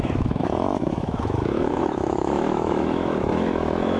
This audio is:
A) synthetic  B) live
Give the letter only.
A